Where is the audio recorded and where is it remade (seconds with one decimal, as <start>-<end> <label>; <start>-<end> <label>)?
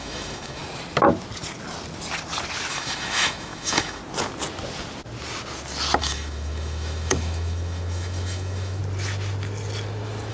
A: 0.0-0.6 remade; 0.6-2.7 recorded; 2.7-4.0 remade; 4.0-6.0 recorded; 6.0-8.8 remade; 8.8-10.3 recorded